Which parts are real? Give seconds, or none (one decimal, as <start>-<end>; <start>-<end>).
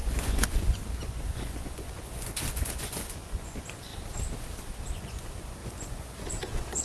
3.9-4.9